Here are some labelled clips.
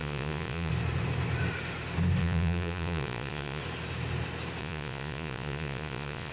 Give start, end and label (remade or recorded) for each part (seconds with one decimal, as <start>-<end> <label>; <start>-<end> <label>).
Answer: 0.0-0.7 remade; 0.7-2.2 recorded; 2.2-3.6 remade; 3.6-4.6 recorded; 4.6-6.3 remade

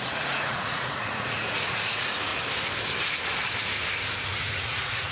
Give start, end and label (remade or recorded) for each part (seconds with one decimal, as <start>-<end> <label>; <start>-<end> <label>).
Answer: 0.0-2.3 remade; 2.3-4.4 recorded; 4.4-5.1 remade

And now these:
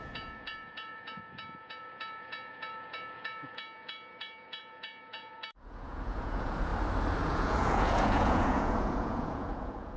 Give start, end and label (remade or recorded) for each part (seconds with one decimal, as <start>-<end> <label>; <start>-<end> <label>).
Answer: 0.0-6.7 remade; 6.7-7.2 recorded; 7.2-10.0 remade

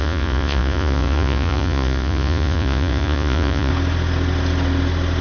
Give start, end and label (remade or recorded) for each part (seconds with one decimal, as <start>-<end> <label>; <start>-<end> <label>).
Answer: 0.0-3.7 remade; 3.7-5.2 recorded